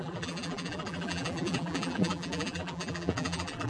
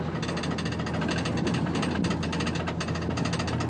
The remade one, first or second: first